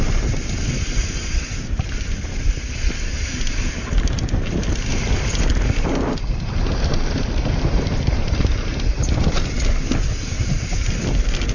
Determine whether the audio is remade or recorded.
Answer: recorded